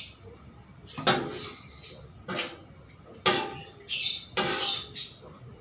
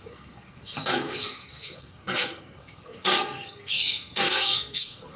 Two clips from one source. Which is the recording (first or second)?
first